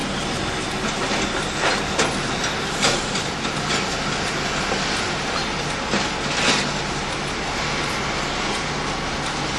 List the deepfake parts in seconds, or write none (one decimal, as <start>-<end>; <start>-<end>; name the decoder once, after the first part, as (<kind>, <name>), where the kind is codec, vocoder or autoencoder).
none